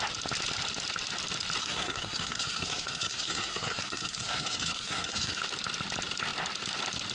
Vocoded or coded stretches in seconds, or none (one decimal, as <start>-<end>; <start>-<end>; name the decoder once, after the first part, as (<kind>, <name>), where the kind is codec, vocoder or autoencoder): 1.6-5.4 (codec, SNAC)